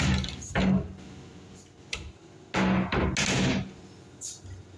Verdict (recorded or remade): recorded